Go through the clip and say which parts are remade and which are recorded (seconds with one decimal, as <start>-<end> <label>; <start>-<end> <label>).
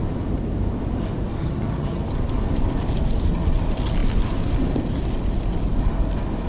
0.0-1.4 recorded; 1.4-2.0 remade; 2.0-6.5 recorded